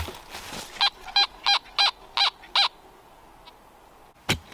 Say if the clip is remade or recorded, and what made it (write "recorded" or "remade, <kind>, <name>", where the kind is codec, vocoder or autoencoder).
recorded